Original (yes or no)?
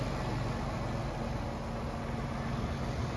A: yes